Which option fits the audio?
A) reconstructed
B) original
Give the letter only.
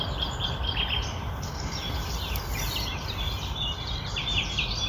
B